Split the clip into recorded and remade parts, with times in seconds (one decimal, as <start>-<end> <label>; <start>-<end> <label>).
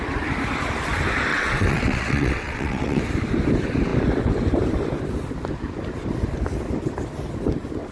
0.0-1.3 recorded; 1.3-3.0 remade; 3.0-7.9 recorded